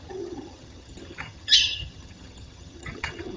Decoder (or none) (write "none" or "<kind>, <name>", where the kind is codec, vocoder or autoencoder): vocoder, HiFi-GAN